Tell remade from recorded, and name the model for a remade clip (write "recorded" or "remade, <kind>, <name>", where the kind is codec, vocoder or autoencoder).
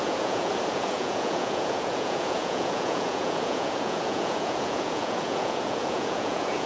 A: remade, vocoder, Vocos